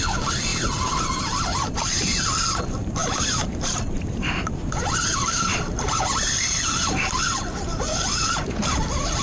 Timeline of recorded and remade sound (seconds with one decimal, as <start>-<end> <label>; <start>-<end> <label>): 0.0-9.2 remade